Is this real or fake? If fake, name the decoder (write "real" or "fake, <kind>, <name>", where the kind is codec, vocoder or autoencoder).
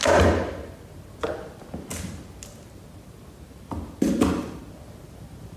real